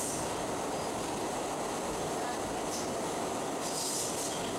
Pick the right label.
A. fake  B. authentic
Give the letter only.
B